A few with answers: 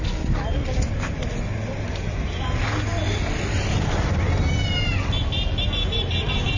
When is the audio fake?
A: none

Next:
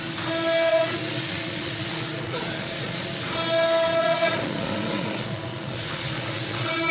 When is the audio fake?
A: 0.7-3.2 (vocoder, Vocos); 4.0-6.9

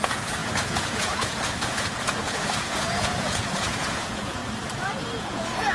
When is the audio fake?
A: 0.0-4.4 (vocoder, Vocos); 5.2-5.7

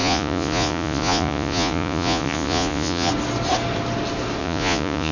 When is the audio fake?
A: 0.0-3.1 (vocoder, Vocos); 4.4-5.1

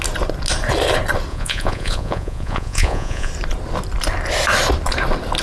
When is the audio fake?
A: 1.3-3.3 (vocoder, Vocos)

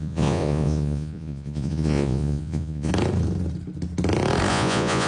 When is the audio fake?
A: 0.0-2.9 (vocoder, Vocos); 4.5-5.1

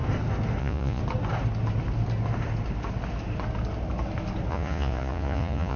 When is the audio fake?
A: 0.6-1.0 (vocoder, Vocos); 4.5-5.8